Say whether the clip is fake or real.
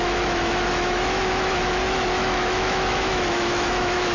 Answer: fake